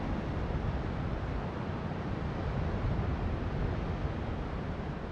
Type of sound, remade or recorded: recorded